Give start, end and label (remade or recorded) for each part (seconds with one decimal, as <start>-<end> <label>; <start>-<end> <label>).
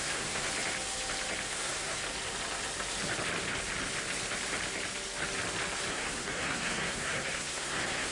0.0-0.5 remade; 0.5-1.5 recorded; 1.5-2.0 remade; 2.0-5.9 recorded; 5.9-8.1 remade